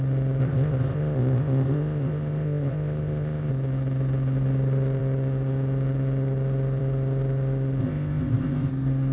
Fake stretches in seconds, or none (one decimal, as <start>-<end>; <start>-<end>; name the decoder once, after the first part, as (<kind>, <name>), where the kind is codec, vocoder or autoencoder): 0.4-3.5 (codec, ZipCodec); 7.8-8.7